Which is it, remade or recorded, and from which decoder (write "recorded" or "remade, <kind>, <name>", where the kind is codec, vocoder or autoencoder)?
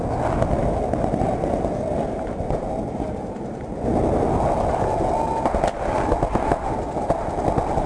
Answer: recorded